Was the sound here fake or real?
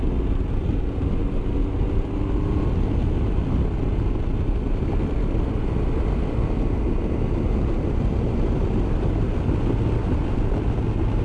real